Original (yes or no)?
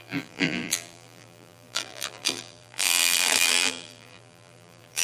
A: no